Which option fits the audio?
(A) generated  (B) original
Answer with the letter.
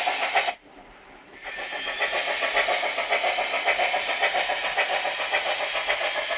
B